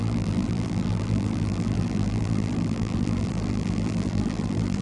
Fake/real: fake